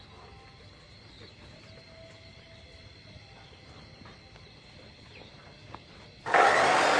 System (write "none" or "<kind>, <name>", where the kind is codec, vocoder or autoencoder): none